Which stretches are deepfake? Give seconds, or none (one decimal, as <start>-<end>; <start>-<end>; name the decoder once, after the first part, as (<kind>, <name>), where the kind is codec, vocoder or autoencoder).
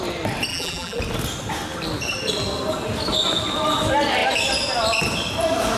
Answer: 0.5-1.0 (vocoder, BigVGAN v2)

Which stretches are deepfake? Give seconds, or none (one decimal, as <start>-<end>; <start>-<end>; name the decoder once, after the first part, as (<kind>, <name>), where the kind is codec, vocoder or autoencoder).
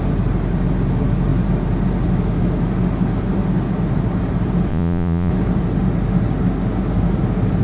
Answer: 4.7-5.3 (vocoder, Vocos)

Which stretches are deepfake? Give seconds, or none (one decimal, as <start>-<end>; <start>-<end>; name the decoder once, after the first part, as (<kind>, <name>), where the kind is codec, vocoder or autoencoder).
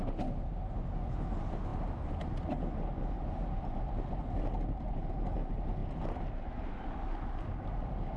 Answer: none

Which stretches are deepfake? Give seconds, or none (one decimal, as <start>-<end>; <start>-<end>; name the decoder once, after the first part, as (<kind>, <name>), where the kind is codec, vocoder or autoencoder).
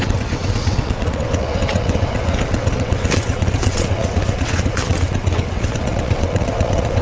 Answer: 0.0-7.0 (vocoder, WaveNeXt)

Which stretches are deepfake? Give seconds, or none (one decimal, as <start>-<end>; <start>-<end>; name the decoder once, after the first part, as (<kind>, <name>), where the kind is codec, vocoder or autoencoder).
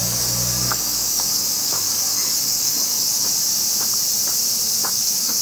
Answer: 0.0-3.2 (codec, DAC); 4.8-5.4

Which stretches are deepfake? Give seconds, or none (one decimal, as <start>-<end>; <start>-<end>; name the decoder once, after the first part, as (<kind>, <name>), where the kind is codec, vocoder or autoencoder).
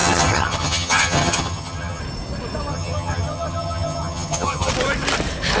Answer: 0.0-2.0 (vocoder, HiFi-GAN); 2.7-4.7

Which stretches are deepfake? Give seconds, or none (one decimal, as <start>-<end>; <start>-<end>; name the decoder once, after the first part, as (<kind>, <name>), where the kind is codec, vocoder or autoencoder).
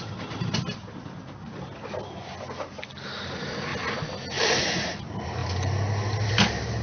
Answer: none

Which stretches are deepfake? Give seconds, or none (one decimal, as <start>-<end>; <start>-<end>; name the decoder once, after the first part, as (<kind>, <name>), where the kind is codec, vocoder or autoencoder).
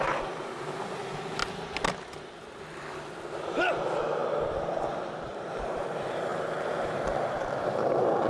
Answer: 0.0-1.4 (vocoder, BigVGAN v2); 3.5-8.3